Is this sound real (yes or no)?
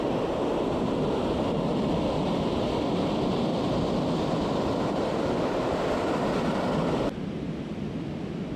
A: yes